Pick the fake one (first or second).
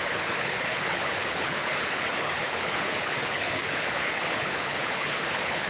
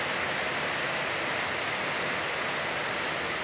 first